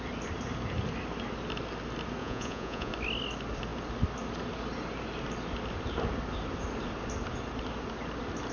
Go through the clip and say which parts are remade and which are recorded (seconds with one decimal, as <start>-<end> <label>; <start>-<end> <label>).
0.0-2.2 recorded; 2.2-2.9 remade; 2.9-8.5 recorded